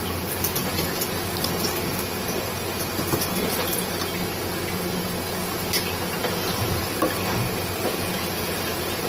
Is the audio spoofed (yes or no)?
no